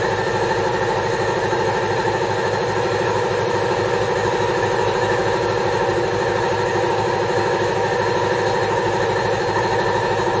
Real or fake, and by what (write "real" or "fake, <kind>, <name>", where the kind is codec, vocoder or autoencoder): real